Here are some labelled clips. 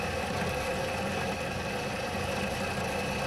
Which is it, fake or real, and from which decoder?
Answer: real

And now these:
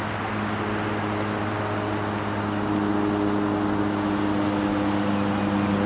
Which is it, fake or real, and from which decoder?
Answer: real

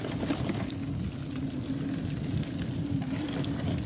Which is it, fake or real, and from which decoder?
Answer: real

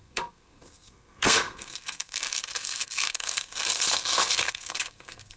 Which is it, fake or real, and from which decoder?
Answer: fake, codec, SNAC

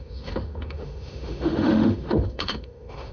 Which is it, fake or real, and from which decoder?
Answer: fake, autoencoder, DAC-VAE